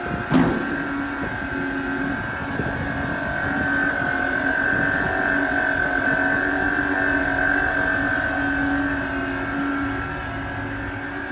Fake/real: real